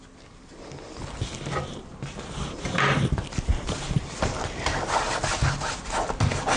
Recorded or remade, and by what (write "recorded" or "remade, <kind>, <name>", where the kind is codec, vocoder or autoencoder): recorded